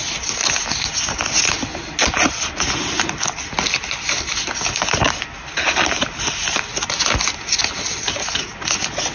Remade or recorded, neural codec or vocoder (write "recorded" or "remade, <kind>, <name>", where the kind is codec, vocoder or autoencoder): recorded